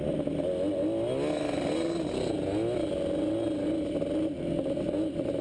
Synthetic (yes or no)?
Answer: no